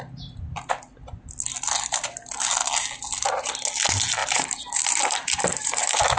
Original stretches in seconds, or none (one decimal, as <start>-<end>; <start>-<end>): 0.0-4.2